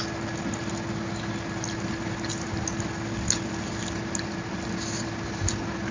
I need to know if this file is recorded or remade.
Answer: recorded